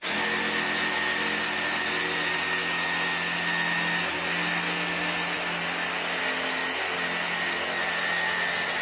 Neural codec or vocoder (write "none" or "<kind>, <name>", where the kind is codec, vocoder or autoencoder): none